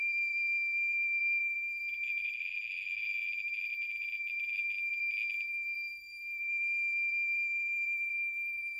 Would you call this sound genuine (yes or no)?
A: no